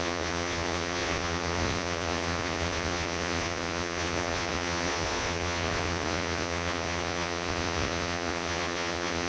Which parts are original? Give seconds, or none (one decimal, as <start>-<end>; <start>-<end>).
none